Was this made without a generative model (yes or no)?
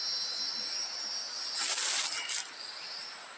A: yes